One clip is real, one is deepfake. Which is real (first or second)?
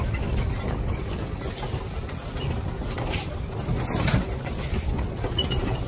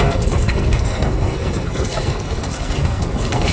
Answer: first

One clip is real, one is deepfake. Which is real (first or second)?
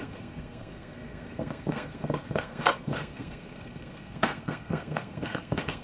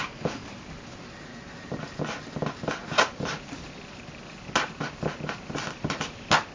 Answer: second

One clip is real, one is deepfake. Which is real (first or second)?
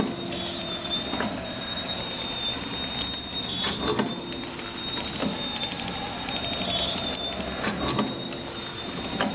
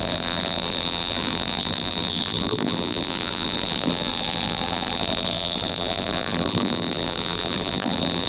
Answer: first